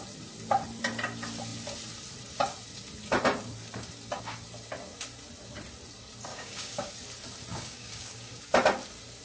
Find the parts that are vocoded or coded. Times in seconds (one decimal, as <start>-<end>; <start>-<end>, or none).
6.3-6.9; 7.5-8.4